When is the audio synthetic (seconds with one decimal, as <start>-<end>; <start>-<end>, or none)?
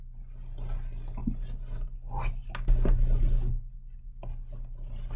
none